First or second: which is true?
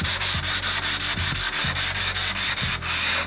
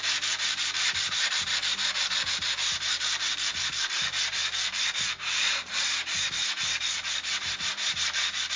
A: first